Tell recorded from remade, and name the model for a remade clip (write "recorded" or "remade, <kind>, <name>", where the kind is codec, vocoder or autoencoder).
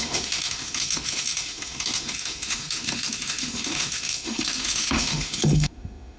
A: remade, autoencoder, DAC-VAE